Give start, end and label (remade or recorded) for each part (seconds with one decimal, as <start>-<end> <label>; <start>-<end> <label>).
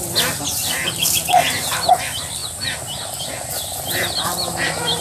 0.0-1.4 recorded; 1.4-1.9 remade; 1.9-5.0 recorded